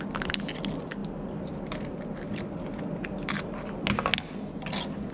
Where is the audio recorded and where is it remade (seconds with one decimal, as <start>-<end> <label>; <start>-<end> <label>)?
0.0-5.1 recorded